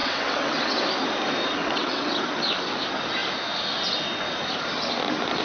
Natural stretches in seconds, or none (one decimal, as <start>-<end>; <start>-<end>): 0.8-1.6; 2.2-5.4